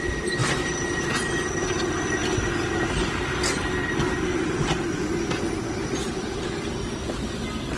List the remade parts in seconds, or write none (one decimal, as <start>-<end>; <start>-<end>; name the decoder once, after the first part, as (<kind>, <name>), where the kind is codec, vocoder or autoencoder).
none